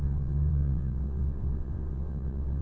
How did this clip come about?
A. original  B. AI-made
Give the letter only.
B